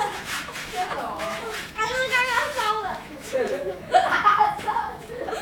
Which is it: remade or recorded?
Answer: remade